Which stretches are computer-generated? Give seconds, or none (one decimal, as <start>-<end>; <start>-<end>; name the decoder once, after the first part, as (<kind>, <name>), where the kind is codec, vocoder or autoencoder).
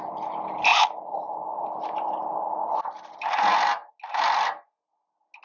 none